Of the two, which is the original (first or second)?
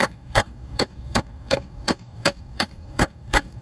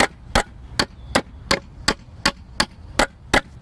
second